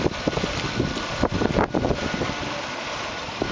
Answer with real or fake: real